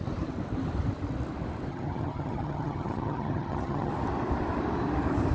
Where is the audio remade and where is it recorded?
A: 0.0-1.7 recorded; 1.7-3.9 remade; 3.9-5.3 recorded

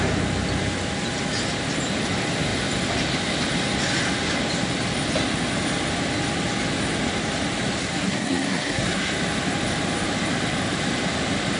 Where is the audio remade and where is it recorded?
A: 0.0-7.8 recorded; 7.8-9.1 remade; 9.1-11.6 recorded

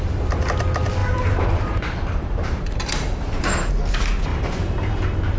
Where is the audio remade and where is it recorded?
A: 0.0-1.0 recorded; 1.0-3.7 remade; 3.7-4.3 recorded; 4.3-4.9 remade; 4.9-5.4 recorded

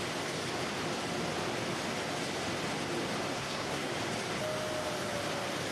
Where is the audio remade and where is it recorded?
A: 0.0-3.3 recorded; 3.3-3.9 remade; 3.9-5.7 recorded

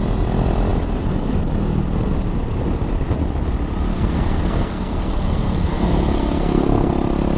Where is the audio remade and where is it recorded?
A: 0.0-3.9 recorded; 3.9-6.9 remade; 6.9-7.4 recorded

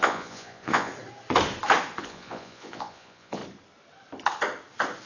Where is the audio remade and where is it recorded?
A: 0.0-0.9 remade; 0.9-2.0 recorded; 2.0-3.4 remade; 3.4-5.1 recorded

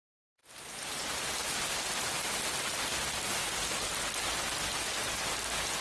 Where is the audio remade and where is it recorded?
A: 0.0-5.8 recorded